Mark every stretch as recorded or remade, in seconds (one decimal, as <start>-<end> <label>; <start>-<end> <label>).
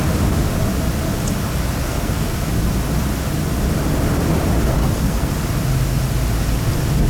0.0-1.8 recorded; 1.8-2.5 remade; 2.5-4.7 recorded; 4.7-5.3 remade; 5.3-7.1 recorded